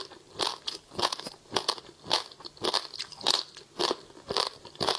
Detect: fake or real real